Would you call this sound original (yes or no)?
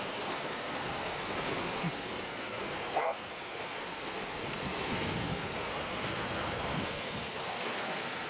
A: no